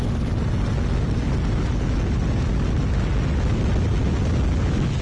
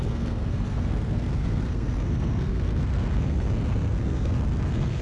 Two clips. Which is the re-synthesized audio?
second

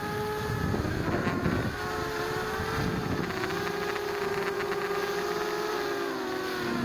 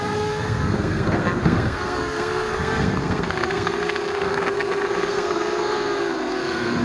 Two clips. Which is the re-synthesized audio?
second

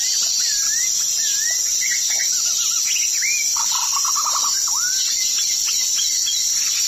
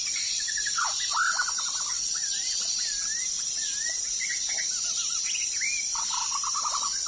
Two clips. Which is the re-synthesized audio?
second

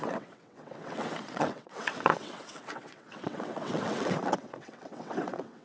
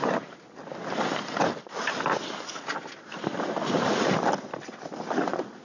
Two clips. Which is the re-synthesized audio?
first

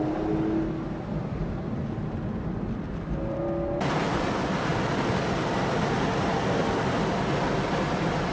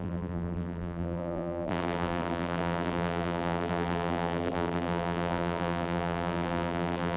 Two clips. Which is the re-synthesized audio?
second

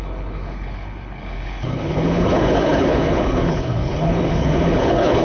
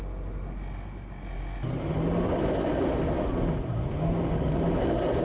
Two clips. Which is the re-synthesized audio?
first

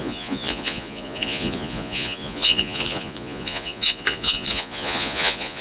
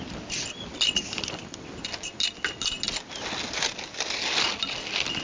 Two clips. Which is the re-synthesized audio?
first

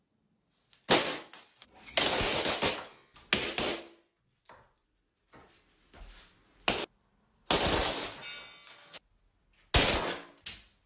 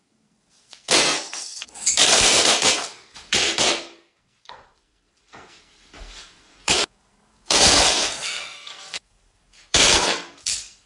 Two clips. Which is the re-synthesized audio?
second